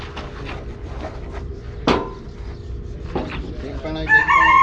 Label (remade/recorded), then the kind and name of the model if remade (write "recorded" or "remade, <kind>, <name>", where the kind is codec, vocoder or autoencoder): recorded